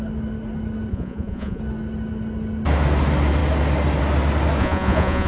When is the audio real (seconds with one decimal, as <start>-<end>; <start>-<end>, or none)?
0.0-0.9; 1.6-4.6